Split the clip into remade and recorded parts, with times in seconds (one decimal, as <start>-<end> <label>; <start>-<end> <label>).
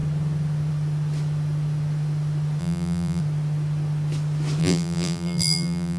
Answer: 0.0-2.6 recorded; 2.6-3.2 remade; 3.2-4.6 recorded; 4.6-6.0 remade